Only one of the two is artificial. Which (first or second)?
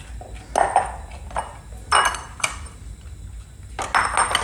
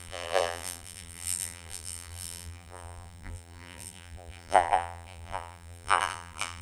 second